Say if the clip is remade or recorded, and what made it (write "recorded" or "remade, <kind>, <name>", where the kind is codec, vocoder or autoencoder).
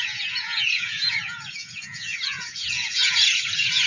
remade, vocoder, Vocos